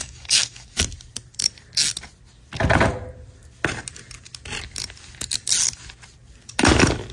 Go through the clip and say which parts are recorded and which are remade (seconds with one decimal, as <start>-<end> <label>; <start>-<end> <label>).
0.0-0.7 remade; 0.7-7.1 recorded